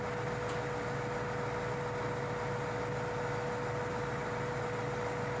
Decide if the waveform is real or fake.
real